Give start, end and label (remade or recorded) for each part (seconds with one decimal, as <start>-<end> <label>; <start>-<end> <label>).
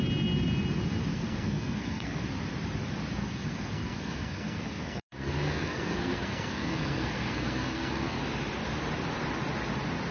0.0-1.1 recorded; 1.1-2.2 remade; 2.2-3.2 recorded; 3.2-8.2 remade; 8.2-10.1 recorded